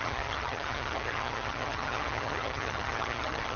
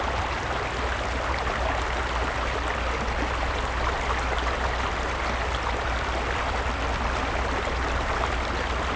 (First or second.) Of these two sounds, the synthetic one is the first